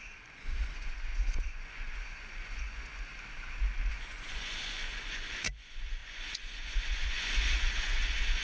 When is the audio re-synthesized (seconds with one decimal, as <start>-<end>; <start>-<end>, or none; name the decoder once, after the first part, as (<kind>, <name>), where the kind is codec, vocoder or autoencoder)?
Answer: 0.0-3.1 (vocoder, Vocos); 3.9-8.4